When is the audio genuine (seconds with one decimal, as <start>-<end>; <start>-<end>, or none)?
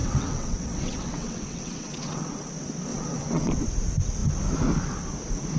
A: 2.5-2.9; 3.5-5.6